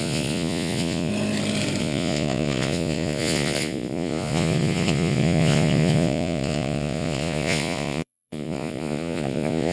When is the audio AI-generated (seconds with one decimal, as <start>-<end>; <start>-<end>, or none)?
0.0-1.1; 1.8-9.7